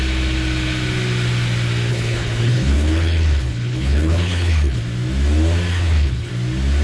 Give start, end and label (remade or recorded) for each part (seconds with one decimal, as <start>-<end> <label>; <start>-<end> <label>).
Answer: 0.0-1.9 recorded; 1.9-4.8 remade; 4.8-5.7 recorded; 5.7-6.3 remade; 6.3-6.8 recorded